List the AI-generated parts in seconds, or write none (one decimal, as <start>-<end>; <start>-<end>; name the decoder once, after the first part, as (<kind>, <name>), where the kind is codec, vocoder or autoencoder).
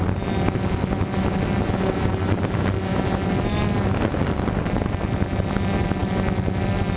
none